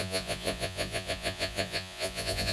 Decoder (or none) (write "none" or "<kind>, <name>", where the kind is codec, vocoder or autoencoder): vocoder, Vocos